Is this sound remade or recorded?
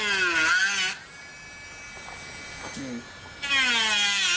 recorded